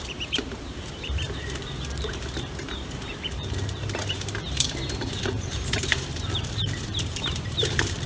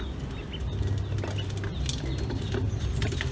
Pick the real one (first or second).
second